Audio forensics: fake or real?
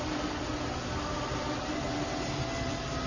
real